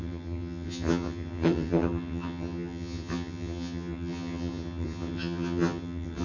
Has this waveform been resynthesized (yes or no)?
yes